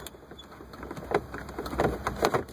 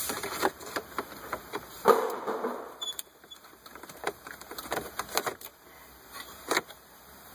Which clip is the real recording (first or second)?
first